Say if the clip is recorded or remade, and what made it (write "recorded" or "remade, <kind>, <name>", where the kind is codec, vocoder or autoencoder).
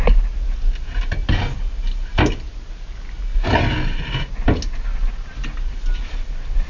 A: recorded